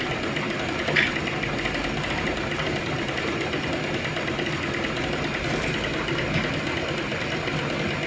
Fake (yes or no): no